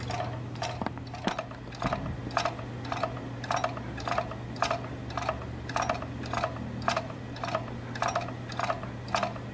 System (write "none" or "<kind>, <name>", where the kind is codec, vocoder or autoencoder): none